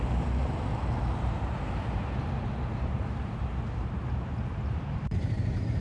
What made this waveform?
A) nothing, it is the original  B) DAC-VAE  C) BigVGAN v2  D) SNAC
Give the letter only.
C